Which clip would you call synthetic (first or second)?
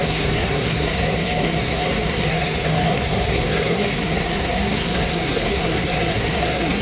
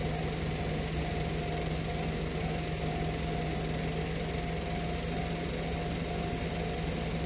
first